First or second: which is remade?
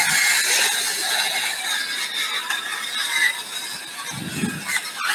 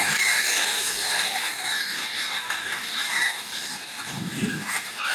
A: second